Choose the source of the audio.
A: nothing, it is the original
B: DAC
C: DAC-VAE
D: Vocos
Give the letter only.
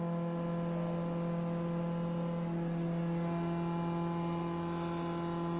A